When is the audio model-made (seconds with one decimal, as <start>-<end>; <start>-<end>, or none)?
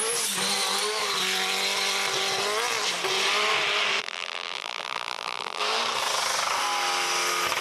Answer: 4.0-5.6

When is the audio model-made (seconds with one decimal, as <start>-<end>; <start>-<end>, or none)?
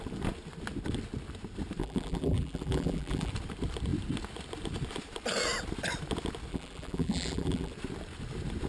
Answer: 1.8-3.3; 6.5-7.7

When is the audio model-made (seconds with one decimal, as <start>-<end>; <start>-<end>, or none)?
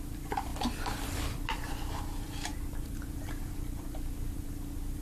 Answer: 0.0-5.0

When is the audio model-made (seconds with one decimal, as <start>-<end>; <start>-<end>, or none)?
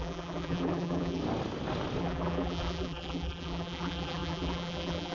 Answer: 0.0-1.2; 2.0-5.1